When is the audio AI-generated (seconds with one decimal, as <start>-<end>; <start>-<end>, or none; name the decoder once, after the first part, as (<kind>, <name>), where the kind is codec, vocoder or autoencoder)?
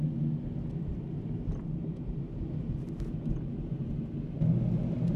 0.9-4.0 (vocoder, BigVGAN v2)